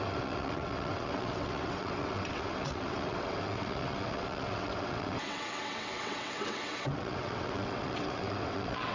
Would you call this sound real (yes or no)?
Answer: no